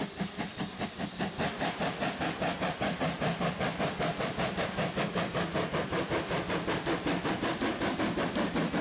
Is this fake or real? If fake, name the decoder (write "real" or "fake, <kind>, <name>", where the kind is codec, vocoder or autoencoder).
real